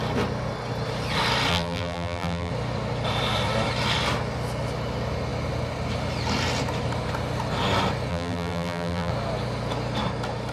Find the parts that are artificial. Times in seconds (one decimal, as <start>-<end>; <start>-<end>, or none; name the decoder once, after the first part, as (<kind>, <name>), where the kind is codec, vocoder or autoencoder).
1.5-2.5 (vocoder, BigVGAN v2); 8.1-9.1